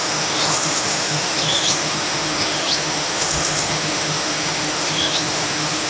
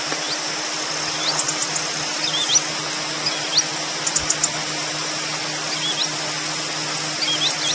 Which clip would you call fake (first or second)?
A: first